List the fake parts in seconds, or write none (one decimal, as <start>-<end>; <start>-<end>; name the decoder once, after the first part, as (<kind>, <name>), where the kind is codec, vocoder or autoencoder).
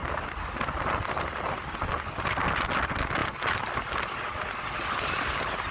0.0-1.9 (vocoder, BigVGAN v2); 3.2-3.9